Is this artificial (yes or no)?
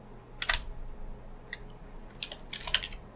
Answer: no